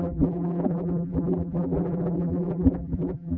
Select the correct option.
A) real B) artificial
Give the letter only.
B